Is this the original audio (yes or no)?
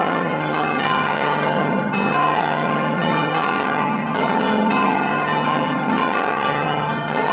no